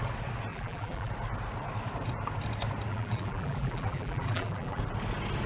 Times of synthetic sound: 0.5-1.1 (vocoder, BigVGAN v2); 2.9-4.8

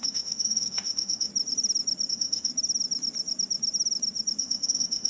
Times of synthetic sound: 0.0-1.3 (autoencoder, DAC-VAE); 2.1-2.5; 4.4-5.1

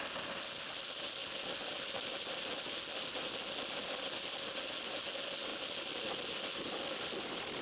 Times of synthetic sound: none

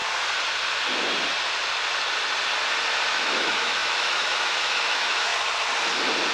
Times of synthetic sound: 3.1-5.3 (autoencoder, DAC-VAE)

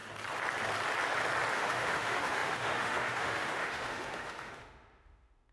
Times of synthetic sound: 1.5-5.5 (autoencoder, DAC-VAE)

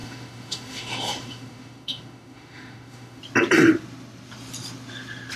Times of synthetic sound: 0.0-3.2 (autoencoder, DAC-VAE)

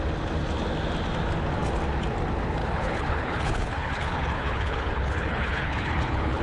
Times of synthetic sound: 2.6-6.4 (codec, HILCodec)